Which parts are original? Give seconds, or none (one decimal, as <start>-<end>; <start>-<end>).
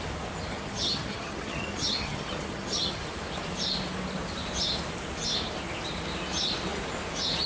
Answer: 0.0-0.5; 3.1-7.5